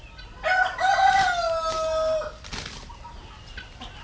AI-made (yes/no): no